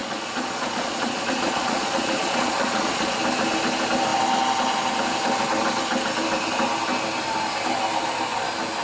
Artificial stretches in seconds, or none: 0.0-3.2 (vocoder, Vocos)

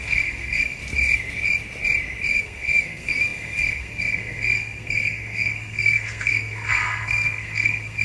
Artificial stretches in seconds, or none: 0.0-0.8 (codec, SNAC); 2.3-8.0